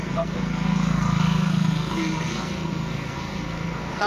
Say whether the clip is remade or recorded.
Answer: remade